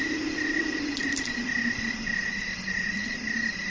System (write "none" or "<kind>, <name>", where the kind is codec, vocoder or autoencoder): none